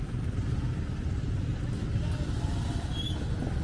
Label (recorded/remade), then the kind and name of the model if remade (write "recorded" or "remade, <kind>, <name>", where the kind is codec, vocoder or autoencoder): recorded